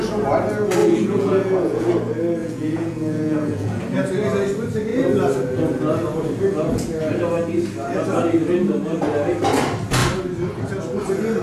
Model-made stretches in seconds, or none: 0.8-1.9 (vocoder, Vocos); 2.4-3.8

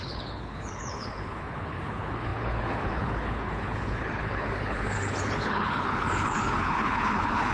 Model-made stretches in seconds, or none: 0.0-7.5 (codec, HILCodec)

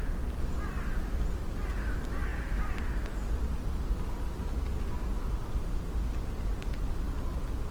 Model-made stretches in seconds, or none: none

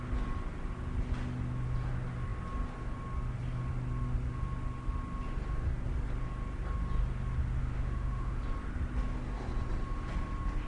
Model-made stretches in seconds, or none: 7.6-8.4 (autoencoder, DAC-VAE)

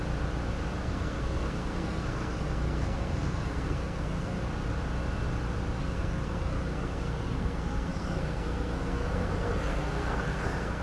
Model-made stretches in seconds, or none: 0.8-4.4 (codec, SNAC); 5.8-10.8

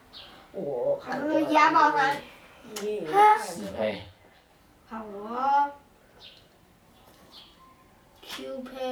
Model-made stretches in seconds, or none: 1.1-2.2 (vocoder, BigVGAN v2); 3.3-4.5